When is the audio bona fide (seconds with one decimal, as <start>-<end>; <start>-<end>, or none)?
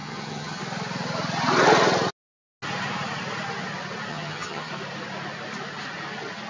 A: 0.6-4.1; 4.7-6.5